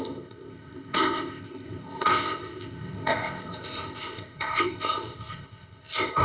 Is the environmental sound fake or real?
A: fake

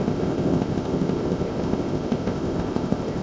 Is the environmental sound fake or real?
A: fake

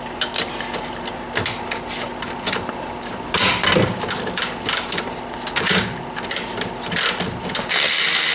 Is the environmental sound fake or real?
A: real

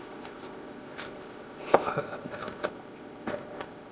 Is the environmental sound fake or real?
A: fake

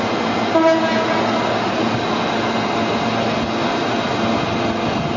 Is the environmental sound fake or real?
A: real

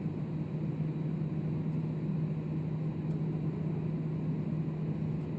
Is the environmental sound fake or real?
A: real